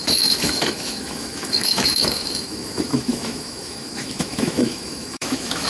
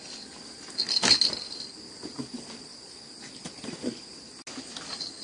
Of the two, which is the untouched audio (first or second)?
second